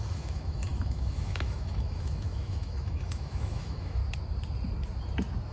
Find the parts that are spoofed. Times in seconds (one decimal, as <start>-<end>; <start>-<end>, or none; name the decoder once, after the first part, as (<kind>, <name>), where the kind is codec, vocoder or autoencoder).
0.0-4.0 (autoencoder, DAC-VAE)